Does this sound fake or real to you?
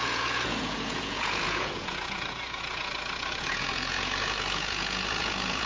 fake